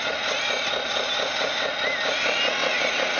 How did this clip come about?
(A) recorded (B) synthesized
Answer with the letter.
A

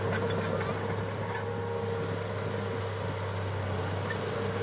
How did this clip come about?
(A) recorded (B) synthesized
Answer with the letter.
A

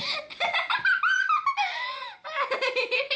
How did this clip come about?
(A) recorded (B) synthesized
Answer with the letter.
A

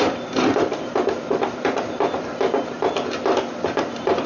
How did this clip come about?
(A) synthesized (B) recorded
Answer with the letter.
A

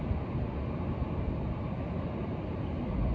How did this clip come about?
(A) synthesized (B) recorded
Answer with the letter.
B